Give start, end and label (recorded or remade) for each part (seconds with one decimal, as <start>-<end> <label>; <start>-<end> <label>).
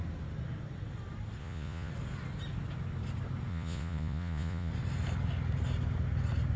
0.0-1.4 recorded; 1.4-1.9 remade; 1.9-3.5 recorded; 3.5-4.7 remade; 4.7-6.6 recorded